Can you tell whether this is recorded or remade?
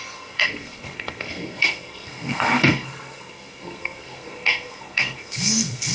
remade